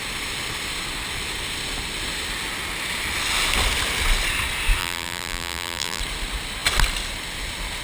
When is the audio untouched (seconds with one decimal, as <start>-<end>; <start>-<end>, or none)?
0.0-4.8; 6.0-7.8